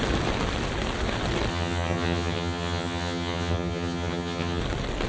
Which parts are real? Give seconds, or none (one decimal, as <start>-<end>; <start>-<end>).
0.0-1.5; 4.6-5.1